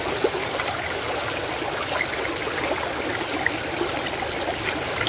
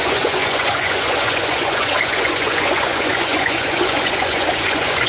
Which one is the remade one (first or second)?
second